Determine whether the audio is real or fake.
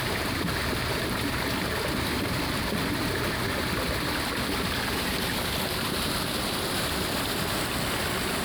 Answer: real